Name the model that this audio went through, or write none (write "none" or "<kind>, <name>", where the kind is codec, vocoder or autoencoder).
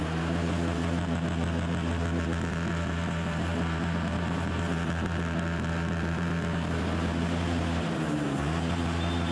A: vocoder, BigVGAN v2